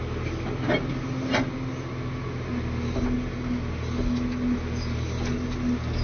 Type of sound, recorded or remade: recorded